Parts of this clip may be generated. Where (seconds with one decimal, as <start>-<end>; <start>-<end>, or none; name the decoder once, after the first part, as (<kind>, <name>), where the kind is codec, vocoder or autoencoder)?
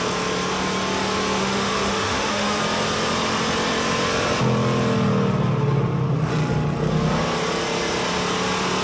1.4-2.6 (autoencoder, DAC-VAE)